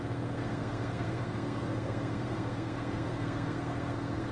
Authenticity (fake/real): fake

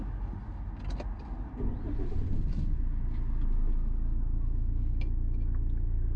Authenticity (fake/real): real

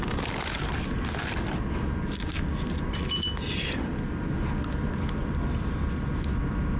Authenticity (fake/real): real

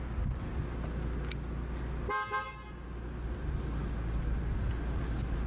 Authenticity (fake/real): real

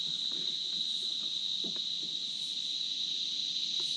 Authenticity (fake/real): real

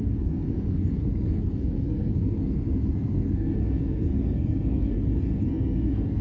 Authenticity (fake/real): fake